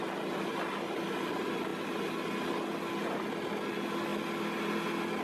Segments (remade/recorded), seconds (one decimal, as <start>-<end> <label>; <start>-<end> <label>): 0.0-5.2 recorded